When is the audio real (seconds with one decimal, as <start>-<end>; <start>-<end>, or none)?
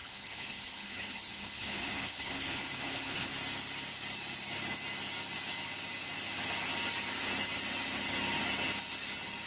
3.3-9.5